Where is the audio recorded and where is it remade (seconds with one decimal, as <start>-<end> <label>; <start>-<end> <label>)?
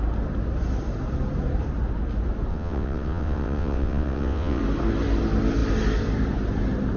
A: 0.0-2.5 recorded; 2.5-4.6 remade; 4.6-7.0 recorded